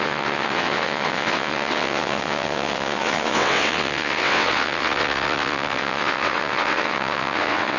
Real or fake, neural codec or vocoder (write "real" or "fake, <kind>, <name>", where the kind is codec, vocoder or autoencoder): fake, vocoder, WaveNeXt